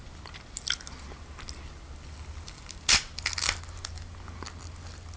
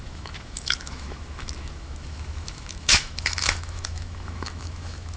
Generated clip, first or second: second